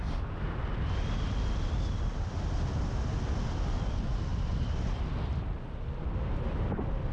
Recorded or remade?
recorded